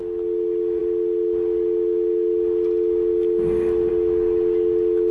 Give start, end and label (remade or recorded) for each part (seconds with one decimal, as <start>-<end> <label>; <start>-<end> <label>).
0.0-5.1 recorded